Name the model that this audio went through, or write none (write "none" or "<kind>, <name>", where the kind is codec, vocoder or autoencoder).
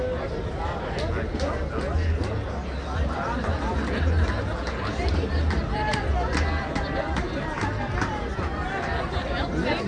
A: none